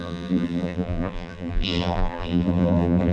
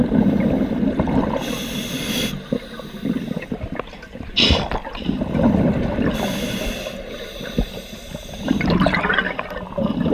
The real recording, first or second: second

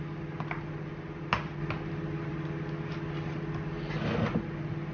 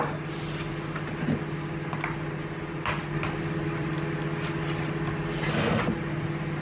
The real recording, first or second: first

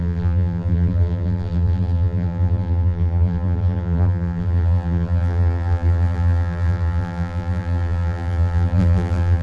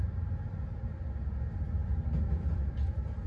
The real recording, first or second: second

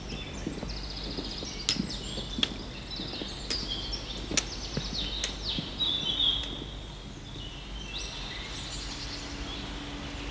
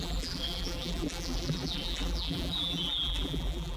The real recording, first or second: first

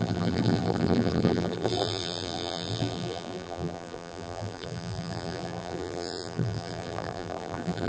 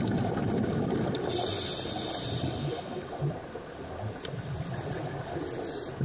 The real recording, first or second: second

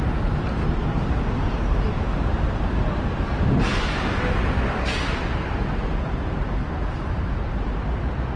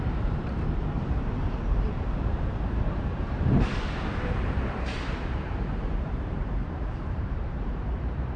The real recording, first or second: first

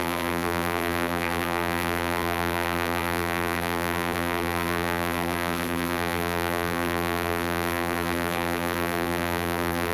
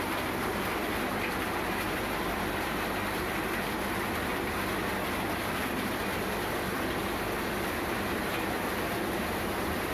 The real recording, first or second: second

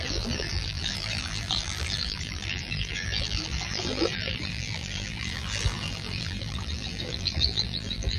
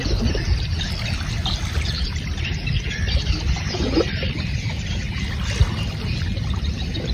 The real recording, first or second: second